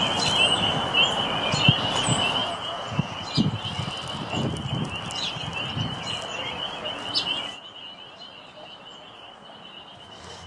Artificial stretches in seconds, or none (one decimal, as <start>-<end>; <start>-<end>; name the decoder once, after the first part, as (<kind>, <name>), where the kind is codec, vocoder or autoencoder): 2.4-3.1 (vocoder, Vocos)